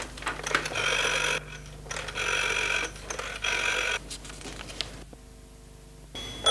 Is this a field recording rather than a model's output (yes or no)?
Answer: yes